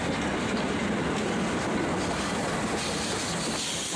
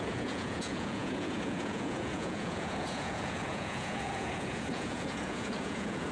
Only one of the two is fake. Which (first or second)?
second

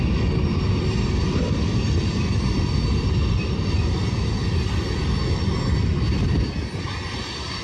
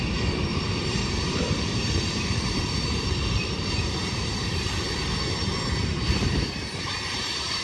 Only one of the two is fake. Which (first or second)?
second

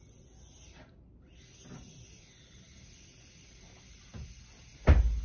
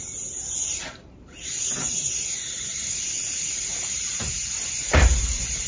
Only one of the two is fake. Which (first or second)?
second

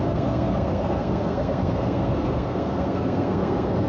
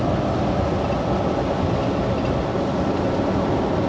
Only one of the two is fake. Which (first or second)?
first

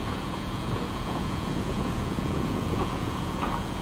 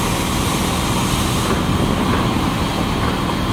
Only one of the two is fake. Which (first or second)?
first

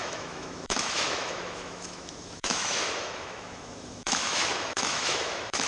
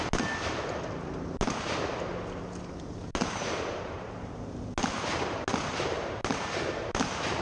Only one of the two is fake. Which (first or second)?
first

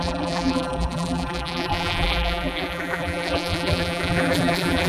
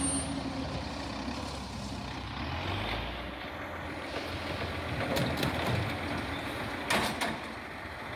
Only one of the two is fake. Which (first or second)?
first